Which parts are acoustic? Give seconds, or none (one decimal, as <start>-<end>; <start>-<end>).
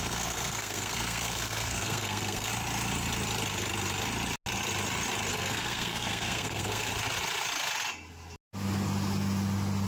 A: 2.5-5.3; 6.9-9.9